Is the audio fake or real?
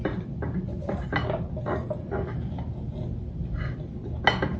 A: real